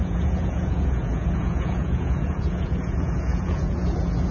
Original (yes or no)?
no